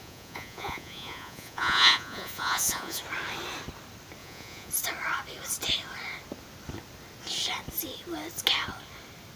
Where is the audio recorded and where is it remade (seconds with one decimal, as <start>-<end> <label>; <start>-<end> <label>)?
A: 0.0-3.0 remade; 3.0-4.2 recorded; 4.2-4.7 remade; 4.7-9.4 recorded